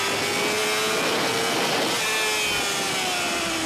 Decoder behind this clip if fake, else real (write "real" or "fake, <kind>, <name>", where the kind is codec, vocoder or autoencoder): real